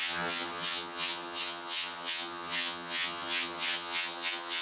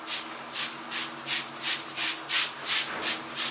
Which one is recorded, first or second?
second